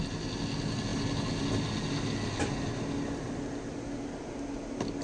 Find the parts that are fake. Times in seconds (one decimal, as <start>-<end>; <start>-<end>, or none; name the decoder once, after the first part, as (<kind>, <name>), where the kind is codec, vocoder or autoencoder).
none